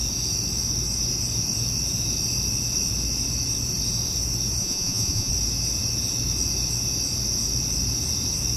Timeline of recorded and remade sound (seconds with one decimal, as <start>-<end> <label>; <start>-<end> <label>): 0.0-4.6 recorded; 4.6-5.3 remade; 5.3-8.6 recorded